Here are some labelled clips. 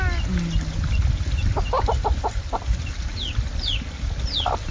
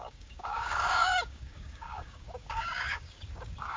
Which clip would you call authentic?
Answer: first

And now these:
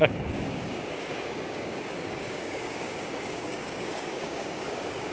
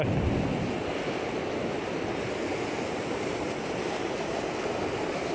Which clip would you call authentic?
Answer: second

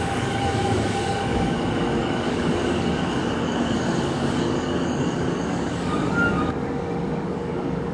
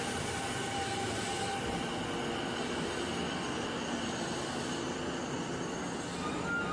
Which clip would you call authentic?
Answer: second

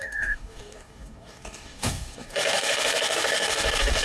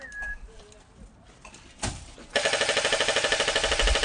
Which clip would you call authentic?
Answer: second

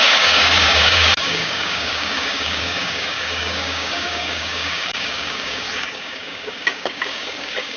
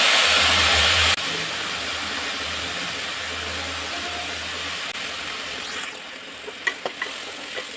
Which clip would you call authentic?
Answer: second